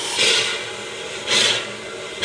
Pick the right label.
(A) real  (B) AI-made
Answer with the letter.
A